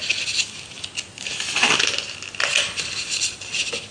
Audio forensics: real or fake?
real